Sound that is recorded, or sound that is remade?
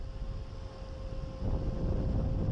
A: recorded